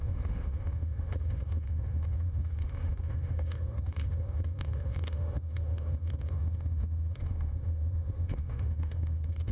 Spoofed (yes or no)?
yes